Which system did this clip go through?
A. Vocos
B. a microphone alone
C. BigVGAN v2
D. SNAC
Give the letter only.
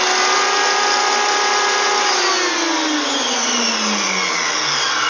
B